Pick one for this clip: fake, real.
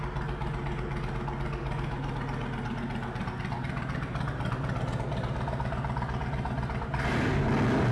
real